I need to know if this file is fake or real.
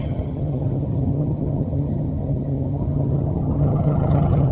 fake